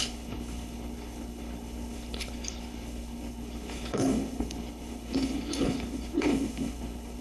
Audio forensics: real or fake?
fake